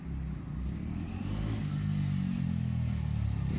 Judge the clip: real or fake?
real